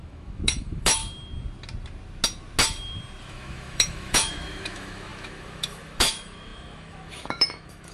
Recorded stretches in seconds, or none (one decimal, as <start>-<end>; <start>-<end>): 1.0-3.2